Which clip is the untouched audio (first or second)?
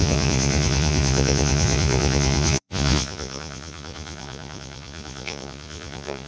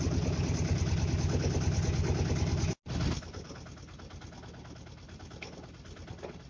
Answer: second